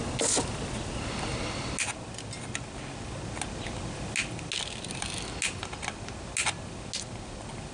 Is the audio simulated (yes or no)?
no